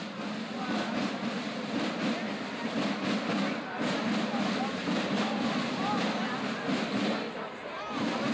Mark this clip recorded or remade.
recorded